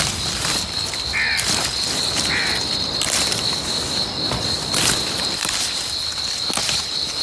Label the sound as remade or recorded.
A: recorded